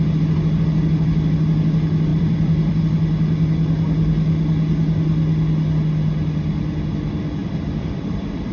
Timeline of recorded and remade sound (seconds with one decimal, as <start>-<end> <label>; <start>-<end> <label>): 0.0-2.1 recorded; 2.1-2.8 remade; 2.8-7.4 recorded; 7.4-8.5 remade